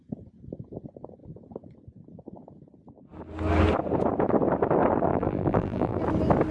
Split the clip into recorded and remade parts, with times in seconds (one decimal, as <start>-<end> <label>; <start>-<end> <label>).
0.0-5.1 recorded; 5.1-6.0 remade; 6.0-6.5 recorded